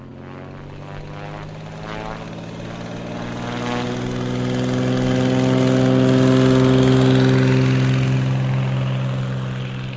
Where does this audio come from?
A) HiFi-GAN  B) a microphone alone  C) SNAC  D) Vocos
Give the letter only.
B